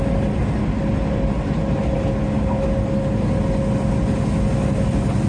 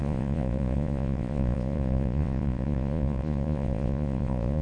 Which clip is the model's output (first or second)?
second